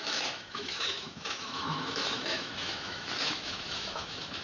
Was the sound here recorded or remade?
remade